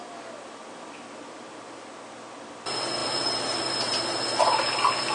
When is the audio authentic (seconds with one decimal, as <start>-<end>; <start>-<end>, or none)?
0.0-5.1